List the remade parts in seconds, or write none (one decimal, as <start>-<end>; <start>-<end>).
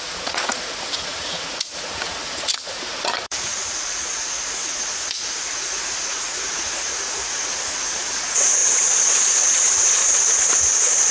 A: 0.0-11.1